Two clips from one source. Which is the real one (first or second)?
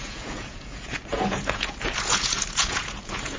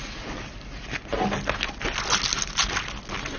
second